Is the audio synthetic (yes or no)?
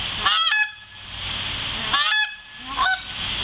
no